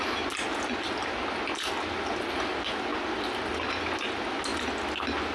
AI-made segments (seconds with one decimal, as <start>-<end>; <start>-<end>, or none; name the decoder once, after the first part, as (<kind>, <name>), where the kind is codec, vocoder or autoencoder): none